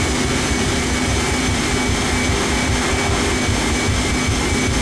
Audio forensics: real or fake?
real